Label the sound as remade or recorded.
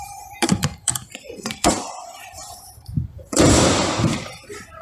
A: remade